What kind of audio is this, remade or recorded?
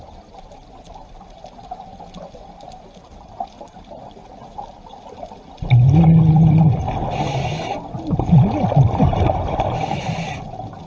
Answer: recorded